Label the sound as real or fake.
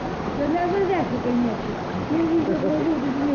real